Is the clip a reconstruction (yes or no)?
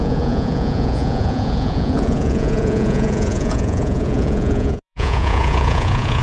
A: yes